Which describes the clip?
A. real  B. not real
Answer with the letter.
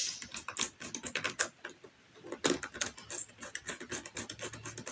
A